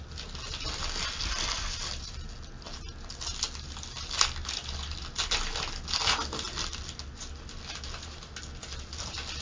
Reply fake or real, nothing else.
real